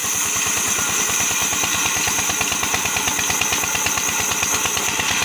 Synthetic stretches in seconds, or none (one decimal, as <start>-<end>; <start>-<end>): none